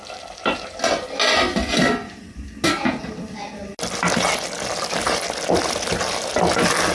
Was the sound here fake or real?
real